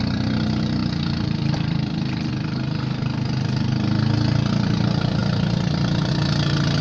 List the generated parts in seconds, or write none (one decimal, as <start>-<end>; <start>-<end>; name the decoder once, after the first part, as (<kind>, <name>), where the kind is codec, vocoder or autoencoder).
0.8-2.3 (vocoder, BigVGAN v2); 5.2-6.1